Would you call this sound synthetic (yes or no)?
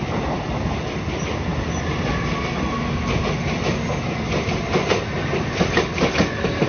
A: no